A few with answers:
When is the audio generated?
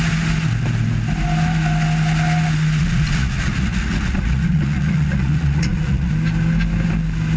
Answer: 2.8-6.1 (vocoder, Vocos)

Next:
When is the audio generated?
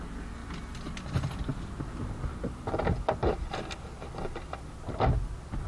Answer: none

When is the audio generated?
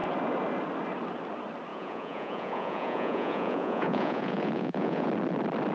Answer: 1.7-5.1 (vocoder, Vocos)